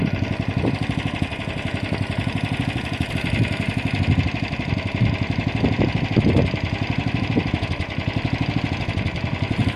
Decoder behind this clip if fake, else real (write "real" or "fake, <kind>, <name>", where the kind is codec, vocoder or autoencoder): real